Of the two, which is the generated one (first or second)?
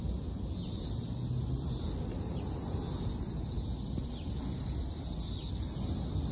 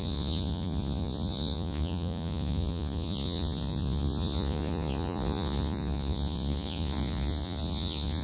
second